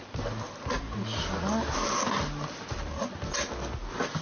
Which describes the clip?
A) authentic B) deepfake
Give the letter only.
A